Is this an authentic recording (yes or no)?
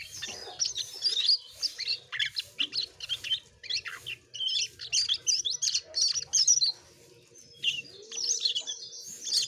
yes